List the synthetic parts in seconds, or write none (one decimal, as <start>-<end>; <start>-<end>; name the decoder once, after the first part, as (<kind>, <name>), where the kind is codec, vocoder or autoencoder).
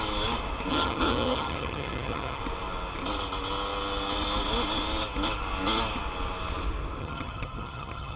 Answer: 0.7-2.4 (vocoder, HiFi-GAN); 7.0-8.2